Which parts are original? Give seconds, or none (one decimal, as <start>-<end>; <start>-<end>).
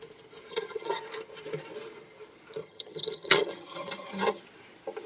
0.0-0.5; 1.0-2.6; 4.4-5.1